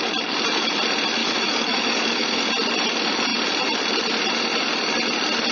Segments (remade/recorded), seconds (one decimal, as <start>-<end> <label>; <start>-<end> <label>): 0.0-1.2 recorded; 1.2-2.4 remade; 2.4-5.5 recorded